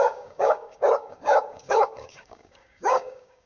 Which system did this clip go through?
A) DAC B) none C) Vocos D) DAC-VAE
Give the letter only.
A